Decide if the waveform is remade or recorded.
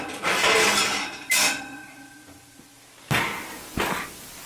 recorded